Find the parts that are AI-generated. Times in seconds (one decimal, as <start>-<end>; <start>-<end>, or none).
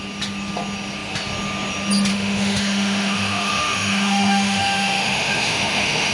2.1-6.1